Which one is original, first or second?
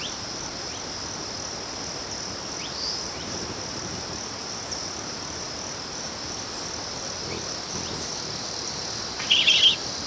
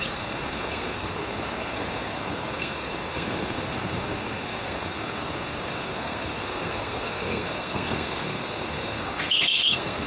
first